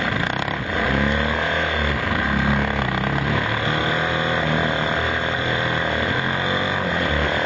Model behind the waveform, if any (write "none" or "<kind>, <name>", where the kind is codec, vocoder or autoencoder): none